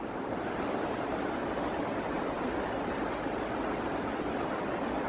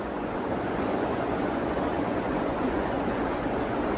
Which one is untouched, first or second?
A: first